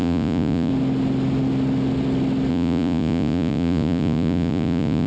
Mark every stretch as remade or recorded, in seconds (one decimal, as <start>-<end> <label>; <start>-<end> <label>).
0.0-0.7 remade; 0.7-2.5 recorded; 2.5-5.1 remade